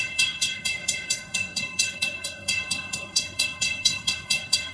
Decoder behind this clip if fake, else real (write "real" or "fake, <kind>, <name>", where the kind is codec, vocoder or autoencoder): fake, codec, SNAC